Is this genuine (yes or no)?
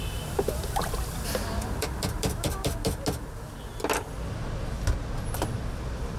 yes